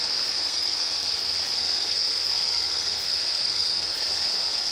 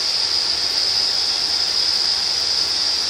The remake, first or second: first